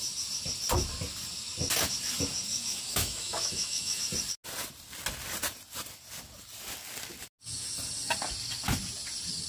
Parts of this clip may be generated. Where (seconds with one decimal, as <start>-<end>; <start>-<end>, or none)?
2.5-4.0